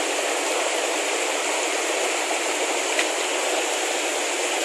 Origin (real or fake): real